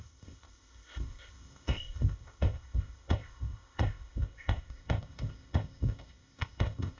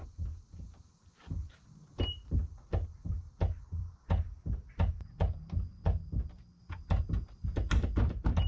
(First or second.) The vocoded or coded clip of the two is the first